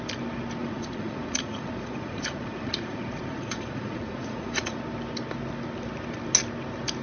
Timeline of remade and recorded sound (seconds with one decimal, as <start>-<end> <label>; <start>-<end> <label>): 0.0-0.6 recorded; 0.6-4.8 remade; 4.8-7.0 recorded